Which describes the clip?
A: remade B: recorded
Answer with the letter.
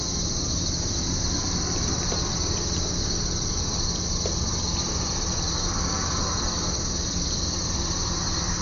A